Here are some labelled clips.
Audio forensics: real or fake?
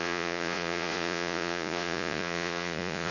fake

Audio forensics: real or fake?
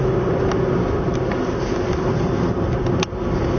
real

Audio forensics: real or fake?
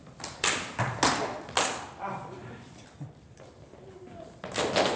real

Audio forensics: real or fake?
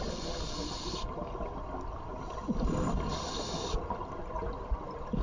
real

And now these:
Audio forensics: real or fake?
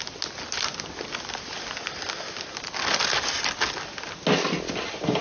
real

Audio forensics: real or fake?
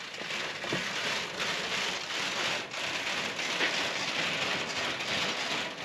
real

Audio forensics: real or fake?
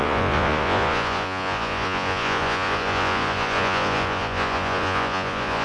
fake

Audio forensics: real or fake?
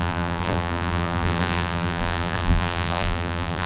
fake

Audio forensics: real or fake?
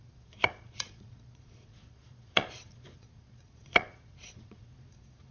fake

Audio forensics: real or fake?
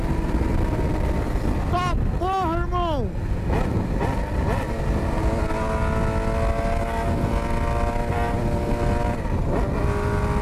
real